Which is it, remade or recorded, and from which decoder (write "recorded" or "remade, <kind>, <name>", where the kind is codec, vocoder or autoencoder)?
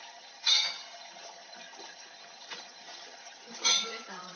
remade, vocoder, HiFi-GAN